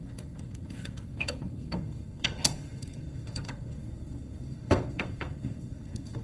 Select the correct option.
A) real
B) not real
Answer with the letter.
B